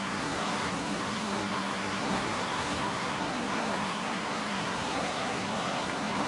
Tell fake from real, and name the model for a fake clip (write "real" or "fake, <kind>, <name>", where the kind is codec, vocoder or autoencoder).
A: fake, codec, SNAC